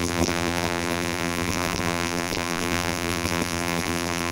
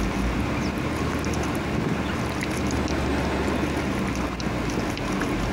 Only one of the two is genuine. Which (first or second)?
second